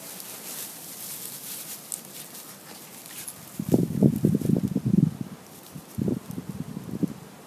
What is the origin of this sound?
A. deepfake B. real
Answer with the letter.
B